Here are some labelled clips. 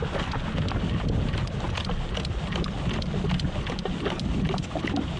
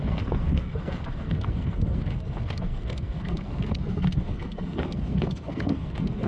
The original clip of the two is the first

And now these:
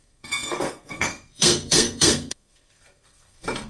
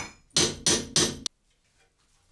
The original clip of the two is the second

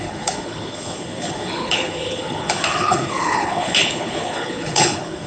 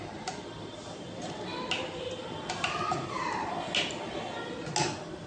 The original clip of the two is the second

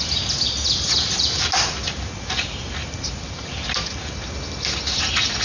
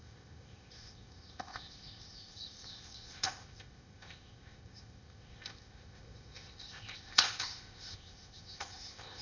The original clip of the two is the first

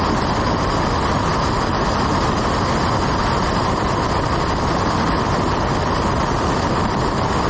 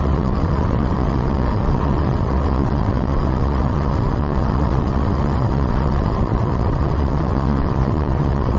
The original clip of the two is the first